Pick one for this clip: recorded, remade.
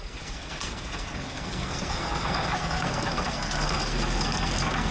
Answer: remade